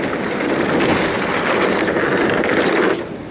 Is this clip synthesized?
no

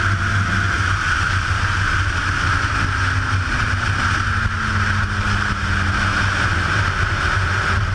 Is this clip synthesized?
no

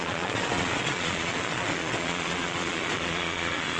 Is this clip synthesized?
yes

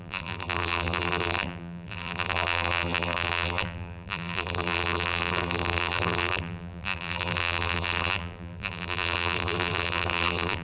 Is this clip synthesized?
yes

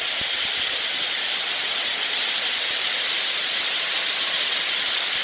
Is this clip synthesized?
no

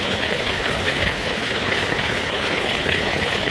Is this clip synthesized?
yes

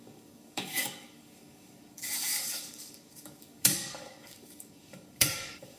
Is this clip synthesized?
yes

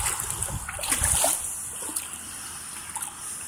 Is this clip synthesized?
no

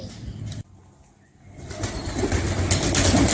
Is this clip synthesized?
no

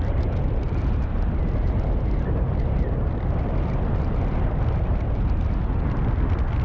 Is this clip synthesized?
no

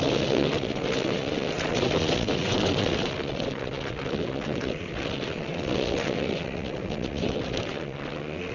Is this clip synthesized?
yes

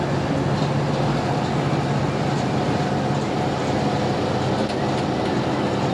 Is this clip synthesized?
no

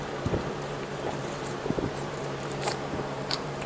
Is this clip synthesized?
yes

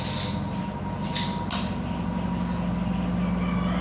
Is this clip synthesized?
no